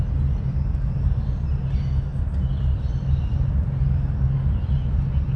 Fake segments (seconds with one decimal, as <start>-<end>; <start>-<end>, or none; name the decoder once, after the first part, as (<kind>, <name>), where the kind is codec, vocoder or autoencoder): none